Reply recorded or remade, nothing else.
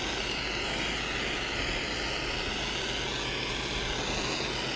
recorded